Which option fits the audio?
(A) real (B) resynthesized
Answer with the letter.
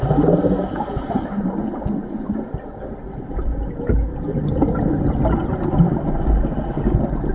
A